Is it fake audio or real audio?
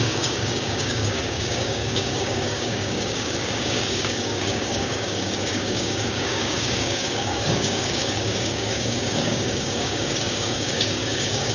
fake